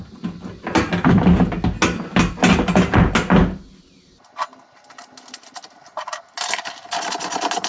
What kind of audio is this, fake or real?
real